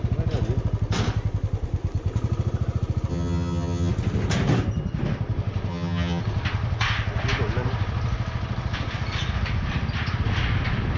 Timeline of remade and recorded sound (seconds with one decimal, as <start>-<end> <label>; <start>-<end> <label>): 0.0-3.1 recorded; 3.1-3.9 remade; 3.9-5.7 recorded; 5.7-6.2 remade; 6.2-11.0 recorded